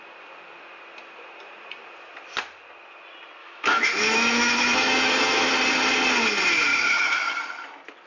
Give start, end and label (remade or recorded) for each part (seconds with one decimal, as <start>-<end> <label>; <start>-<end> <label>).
0.0-3.4 recorded; 3.4-5.5 remade; 5.5-6.7 recorded; 6.7-7.4 remade; 7.4-8.1 recorded